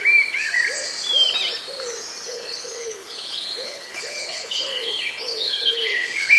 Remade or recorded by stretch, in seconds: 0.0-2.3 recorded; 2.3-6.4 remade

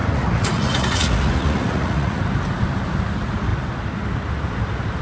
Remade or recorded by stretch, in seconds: 0.0-2.2 remade; 2.2-5.0 recorded

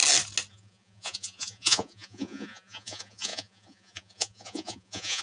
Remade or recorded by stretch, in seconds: 0.0-0.5 recorded; 0.5-5.2 remade

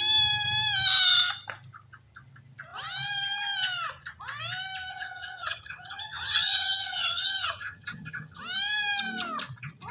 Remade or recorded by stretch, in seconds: 0.0-4.9 recorded; 4.9-8.4 remade; 8.4-9.9 recorded

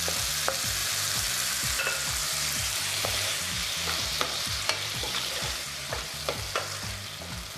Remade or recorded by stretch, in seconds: 0.0-0.8 recorded; 0.8-1.8 remade; 1.8-2.2 recorded; 2.2-6.2 remade; 6.2-7.6 recorded

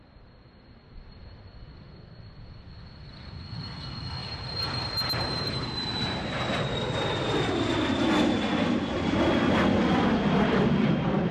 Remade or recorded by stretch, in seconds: 0.0-4.2 recorded; 4.2-6.5 remade; 6.5-11.3 recorded

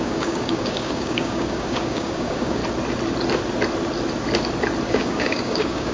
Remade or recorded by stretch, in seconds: 0.0-2.6 remade; 2.6-4.9 recorded; 4.9-5.9 remade